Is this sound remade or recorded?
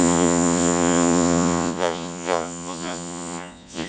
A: remade